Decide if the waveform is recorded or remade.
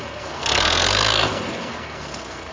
remade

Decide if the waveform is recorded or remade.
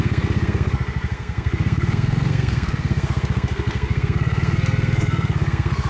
remade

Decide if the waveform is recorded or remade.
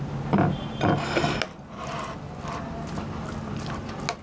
recorded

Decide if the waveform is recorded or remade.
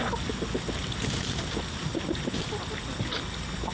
recorded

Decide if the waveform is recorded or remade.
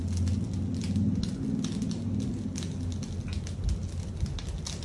recorded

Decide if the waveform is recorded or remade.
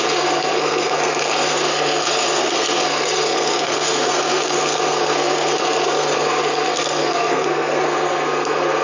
remade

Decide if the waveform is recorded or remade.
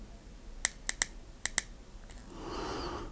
recorded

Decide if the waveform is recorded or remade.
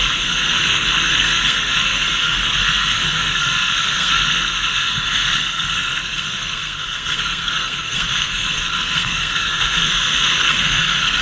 remade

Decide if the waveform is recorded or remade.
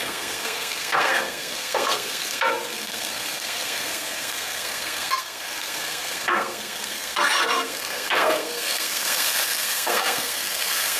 remade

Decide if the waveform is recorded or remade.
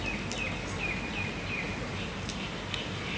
recorded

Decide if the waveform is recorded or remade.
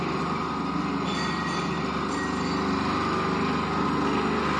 recorded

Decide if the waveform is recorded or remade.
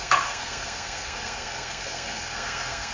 remade